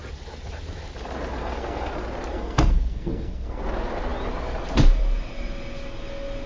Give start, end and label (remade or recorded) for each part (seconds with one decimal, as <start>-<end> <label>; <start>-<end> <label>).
0.0-1.4 recorded; 1.4-1.9 remade; 1.9-2.3 recorded; 2.3-3.6 remade; 3.6-6.5 recorded